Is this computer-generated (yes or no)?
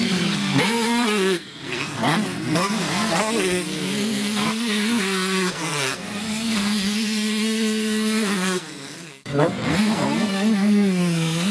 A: yes